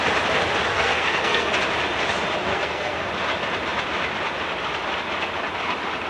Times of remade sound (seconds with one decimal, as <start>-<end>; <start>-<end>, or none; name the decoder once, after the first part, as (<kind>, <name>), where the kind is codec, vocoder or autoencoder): 0.7-1.6 (codec, SNAC); 2.5-3.1